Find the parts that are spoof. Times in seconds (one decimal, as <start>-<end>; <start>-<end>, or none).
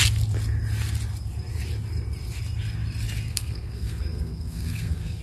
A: 3.3-5.2